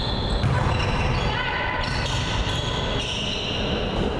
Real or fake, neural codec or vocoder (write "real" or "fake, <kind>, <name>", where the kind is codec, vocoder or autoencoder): real